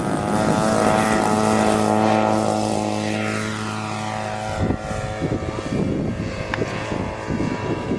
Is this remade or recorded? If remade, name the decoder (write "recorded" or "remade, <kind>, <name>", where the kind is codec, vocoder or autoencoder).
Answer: recorded